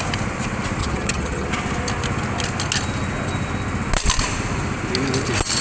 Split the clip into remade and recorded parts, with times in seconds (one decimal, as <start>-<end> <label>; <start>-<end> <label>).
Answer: 0.0-0.8 recorded; 0.8-1.5 remade; 1.5-5.6 recorded